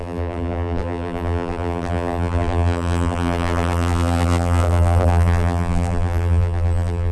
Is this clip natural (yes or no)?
no